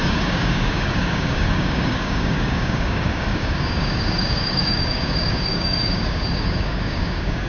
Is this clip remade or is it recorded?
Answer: remade